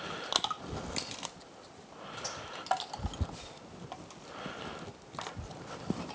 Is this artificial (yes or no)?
no